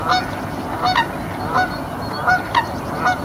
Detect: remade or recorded recorded